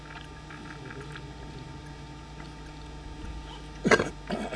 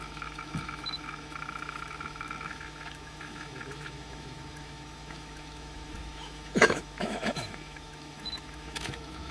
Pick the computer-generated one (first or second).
second